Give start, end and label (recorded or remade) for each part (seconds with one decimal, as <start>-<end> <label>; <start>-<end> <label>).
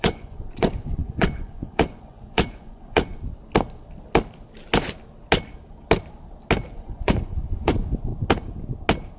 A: 0.0-3.1 remade; 3.1-6.7 recorded; 6.7-8.1 remade; 8.1-9.2 recorded